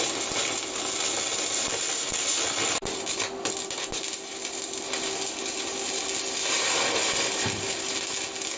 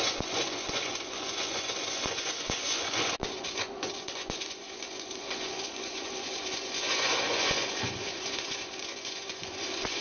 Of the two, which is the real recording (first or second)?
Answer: first